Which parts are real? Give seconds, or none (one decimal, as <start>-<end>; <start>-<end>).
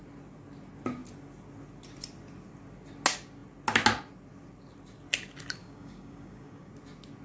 0.0-5.6; 6.7-7.2